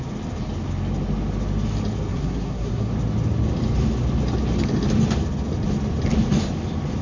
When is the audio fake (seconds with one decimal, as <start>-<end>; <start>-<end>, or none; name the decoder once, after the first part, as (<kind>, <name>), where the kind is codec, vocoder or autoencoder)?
2.1-2.9 (codec, SNAC)